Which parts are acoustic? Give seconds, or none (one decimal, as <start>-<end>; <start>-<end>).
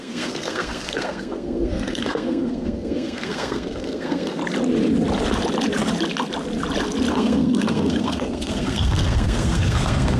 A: 4.4-7.1